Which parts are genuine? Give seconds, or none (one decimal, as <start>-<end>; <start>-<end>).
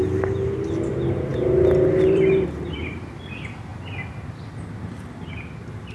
0.0-1.3; 2.8-5.9